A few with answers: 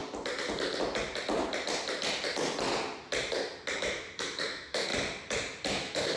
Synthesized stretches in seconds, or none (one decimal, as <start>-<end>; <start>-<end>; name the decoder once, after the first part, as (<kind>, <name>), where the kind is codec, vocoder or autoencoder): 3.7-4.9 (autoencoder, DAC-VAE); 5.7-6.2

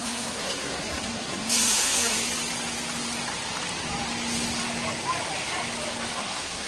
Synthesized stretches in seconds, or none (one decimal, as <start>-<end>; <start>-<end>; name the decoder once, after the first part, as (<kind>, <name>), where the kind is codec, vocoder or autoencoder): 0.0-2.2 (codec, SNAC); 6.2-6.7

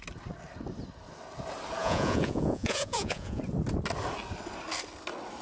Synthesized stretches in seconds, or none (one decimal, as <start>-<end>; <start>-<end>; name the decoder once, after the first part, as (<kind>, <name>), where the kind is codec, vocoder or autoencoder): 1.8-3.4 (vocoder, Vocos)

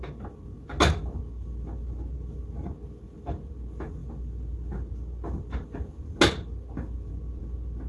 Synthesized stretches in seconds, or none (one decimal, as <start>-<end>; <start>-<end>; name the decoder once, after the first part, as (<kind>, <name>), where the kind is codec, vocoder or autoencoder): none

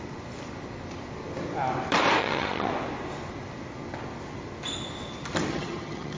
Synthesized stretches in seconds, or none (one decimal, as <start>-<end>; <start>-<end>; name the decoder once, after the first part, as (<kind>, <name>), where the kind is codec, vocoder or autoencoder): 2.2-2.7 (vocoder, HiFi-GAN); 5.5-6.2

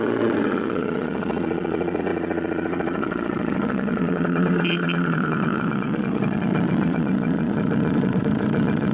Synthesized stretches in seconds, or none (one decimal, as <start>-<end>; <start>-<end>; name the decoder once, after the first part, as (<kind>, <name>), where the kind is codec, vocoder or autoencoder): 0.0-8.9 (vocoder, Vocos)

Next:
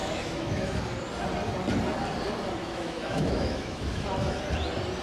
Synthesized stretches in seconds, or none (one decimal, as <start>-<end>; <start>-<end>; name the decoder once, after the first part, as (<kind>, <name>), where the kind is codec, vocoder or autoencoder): 0.0-0.8 (autoencoder, DAC-VAE); 2.6-4.4

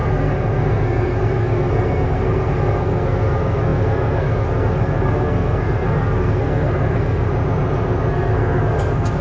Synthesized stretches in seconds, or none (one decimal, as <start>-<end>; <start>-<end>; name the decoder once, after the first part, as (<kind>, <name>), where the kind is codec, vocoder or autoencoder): 0.0-7.3 (codec, SNAC); 8.1-9.2